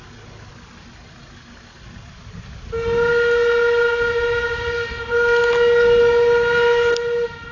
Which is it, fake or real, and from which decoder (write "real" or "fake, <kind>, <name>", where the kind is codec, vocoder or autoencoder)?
real